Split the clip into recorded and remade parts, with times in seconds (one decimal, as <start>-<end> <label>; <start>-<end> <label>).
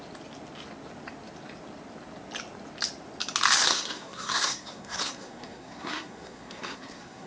0.0-3.7 recorded; 3.7-7.3 remade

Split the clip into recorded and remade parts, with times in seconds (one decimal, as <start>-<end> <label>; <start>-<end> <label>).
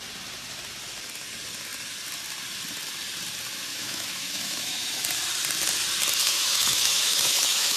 0.0-3.7 recorded; 3.7-5.0 remade; 5.0-6.2 recorded; 6.2-7.8 remade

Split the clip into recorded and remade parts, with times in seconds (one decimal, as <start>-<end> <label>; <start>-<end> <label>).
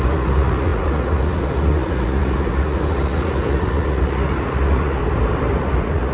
0.0-5.0 remade; 5.0-5.6 recorded; 5.6-6.1 remade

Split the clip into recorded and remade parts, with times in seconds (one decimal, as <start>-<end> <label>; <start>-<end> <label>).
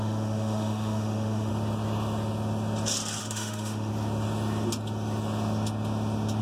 0.0-1.5 remade; 1.5-3.2 recorded; 3.2-3.9 remade; 3.9-6.4 recorded